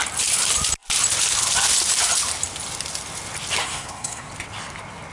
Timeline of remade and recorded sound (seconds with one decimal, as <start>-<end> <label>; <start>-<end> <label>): 0.0-3.6 recorded; 3.6-4.3 remade; 4.3-5.1 recorded